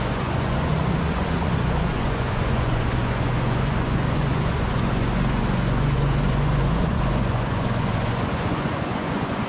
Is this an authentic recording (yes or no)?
no